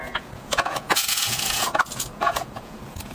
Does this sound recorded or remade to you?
remade